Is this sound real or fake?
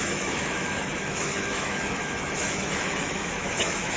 fake